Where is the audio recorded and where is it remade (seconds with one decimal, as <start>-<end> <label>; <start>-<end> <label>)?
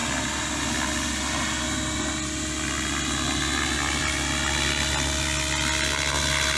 0.0-6.6 recorded